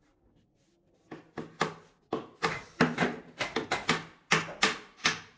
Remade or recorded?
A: recorded